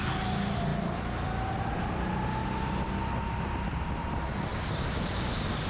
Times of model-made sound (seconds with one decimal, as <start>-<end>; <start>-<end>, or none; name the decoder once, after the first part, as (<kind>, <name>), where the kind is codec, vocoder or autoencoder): none